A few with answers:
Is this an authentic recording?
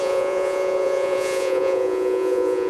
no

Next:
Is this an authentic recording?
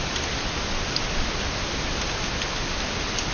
yes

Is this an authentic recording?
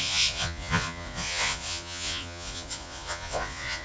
no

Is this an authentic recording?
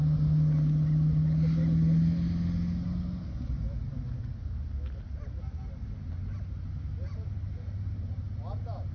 yes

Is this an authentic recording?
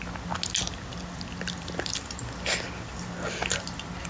yes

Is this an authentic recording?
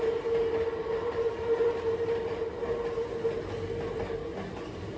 yes